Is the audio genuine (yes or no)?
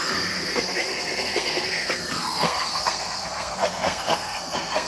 no